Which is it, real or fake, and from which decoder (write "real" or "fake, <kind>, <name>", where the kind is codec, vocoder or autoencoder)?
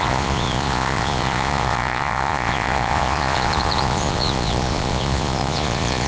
fake, vocoder, Vocos